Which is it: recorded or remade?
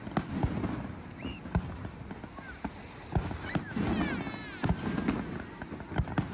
recorded